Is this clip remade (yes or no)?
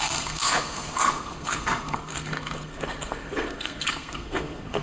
yes